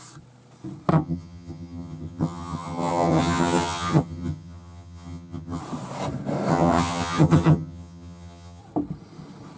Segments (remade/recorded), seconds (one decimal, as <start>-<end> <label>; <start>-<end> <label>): 0.0-0.9 recorded; 0.9-5.6 remade; 5.6-6.5 recorded; 6.5-8.6 remade; 8.6-9.6 recorded